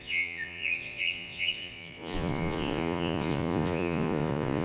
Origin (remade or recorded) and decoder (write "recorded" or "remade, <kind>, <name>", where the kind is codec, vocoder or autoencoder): remade, vocoder, Vocos